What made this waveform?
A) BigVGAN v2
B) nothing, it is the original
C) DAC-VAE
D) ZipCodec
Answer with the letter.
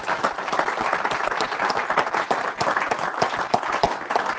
B